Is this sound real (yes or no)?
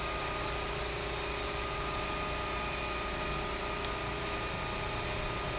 yes